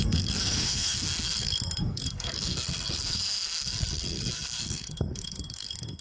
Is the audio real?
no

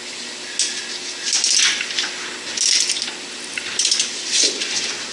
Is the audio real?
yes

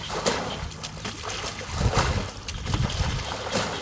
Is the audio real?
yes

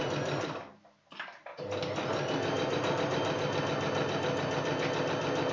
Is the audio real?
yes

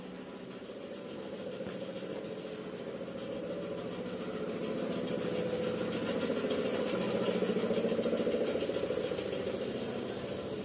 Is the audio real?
yes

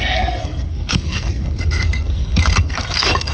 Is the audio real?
no